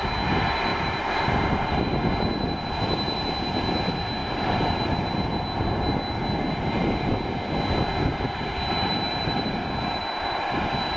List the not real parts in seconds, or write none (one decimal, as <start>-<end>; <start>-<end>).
0.7-1.8; 4.2-5.4; 8.1-10.0